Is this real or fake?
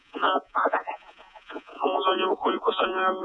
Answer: fake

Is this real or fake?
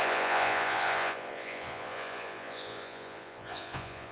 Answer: fake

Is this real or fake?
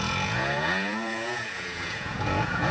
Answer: fake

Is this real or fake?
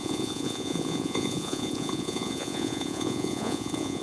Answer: fake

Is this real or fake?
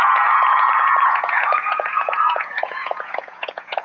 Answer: fake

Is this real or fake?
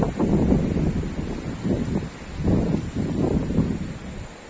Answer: real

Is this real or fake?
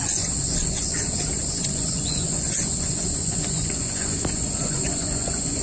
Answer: fake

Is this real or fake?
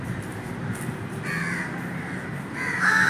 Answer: real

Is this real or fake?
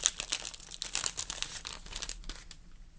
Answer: real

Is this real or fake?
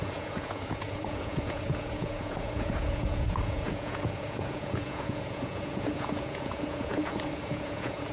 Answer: fake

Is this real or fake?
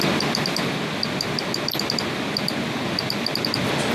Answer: real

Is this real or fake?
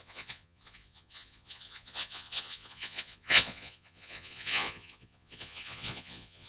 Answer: fake